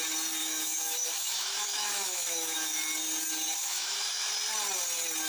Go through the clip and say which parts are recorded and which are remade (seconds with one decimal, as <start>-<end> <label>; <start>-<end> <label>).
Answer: 0.0-0.4 recorded; 0.4-2.8 remade; 2.8-3.6 recorded; 3.6-4.3 remade; 4.3-5.3 recorded